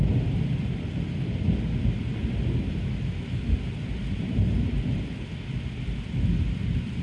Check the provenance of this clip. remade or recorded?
recorded